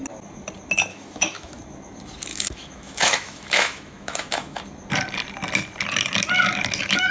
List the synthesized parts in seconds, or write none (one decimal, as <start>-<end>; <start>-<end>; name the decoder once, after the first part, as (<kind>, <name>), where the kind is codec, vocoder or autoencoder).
0.9-1.5 (autoencoder, DAC-VAE); 2.3-4.6